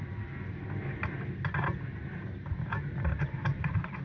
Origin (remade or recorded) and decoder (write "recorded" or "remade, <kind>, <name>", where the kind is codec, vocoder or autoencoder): recorded